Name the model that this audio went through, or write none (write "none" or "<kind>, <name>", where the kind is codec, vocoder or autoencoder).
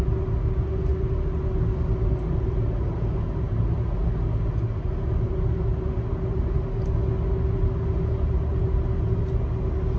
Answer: none